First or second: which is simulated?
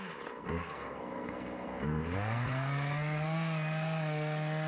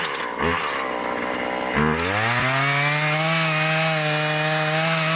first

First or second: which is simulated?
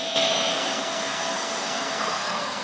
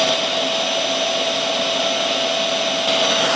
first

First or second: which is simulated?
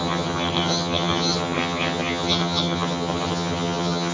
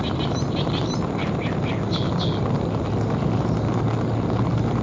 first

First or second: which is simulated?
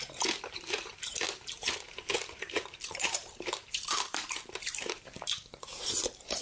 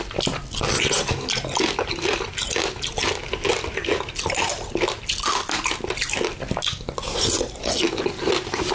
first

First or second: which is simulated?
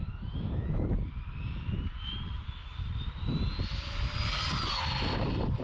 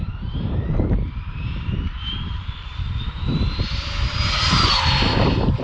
second